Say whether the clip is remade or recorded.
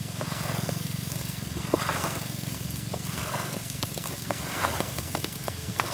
remade